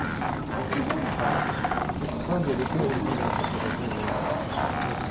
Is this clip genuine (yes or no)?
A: yes